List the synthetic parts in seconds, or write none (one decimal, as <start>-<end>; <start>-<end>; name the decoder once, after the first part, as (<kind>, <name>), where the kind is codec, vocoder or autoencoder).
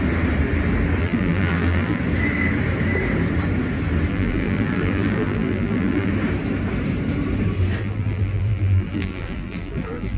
1.0-2.0 (vocoder, BigVGAN v2); 4.1-6.1; 7.8-10.2